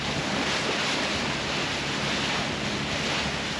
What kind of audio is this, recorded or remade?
recorded